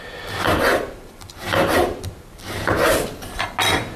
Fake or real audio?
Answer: real